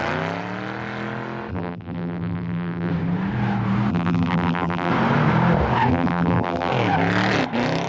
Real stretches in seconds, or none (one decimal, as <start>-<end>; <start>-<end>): 0.0-1.5; 2.9-3.9; 4.9-5.9; 6.7-7.9